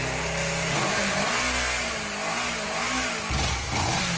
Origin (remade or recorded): recorded